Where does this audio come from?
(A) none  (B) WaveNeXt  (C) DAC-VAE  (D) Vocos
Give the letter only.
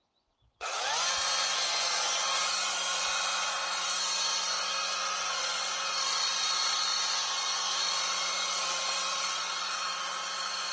D